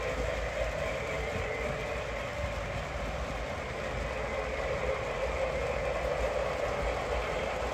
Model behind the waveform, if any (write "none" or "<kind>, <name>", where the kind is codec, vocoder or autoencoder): none